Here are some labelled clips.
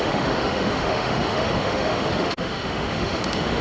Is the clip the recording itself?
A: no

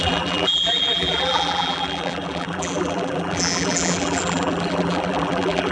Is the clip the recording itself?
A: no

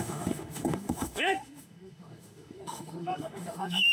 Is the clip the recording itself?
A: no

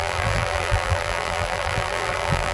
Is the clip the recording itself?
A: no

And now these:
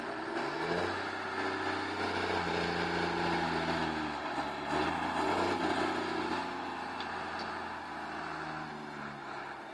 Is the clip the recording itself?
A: yes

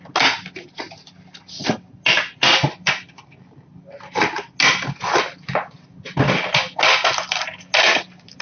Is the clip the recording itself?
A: yes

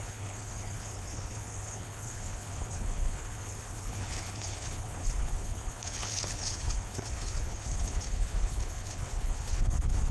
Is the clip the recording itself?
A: no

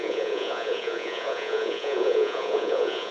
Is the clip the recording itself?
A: no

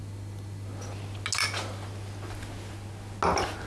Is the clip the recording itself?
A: yes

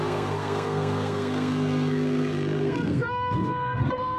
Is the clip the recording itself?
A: no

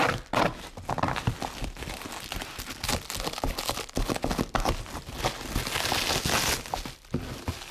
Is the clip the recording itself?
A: yes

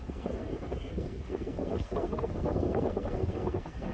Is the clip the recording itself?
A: no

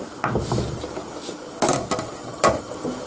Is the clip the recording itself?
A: yes